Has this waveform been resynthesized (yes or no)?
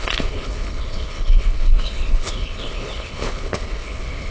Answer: yes